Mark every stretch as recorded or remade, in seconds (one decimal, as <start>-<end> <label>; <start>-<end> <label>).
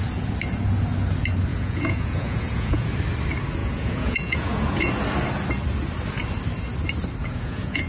0.0-1.5 recorded; 1.5-2.9 remade; 2.9-3.6 recorded; 3.6-4.9 remade; 4.9-7.2 recorded; 7.2-7.9 remade